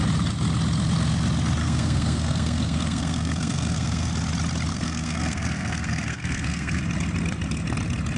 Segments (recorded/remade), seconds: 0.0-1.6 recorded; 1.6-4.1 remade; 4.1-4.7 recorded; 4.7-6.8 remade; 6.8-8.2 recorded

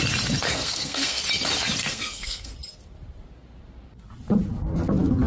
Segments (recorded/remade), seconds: 0.0-0.5 recorded; 0.5-1.2 remade; 1.2-1.8 recorded; 1.8-2.5 remade; 2.5-5.3 recorded

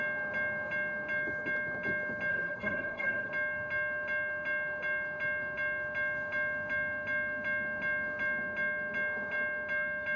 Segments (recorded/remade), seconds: 0.0-2.3 recorded; 2.3-3.3 remade; 3.3-10.2 recorded

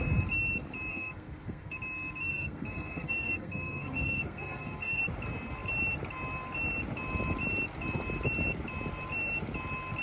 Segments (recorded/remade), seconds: 0.0-0.9 recorded; 0.9-1.7 remade; 1.7-2.3 recorded; 2.3-5.0 remade; 5.0-10.0 recorded

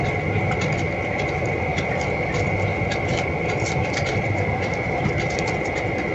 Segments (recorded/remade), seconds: 0.0-6.1 recorded